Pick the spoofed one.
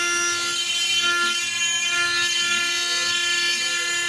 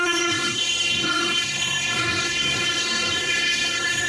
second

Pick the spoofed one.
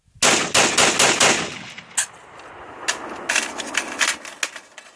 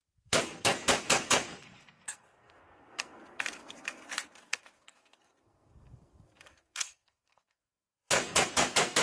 second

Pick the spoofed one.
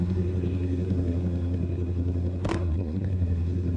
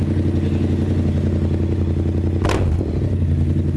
first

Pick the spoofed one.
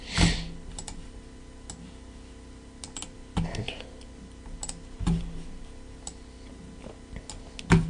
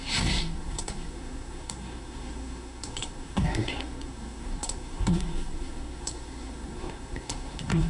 second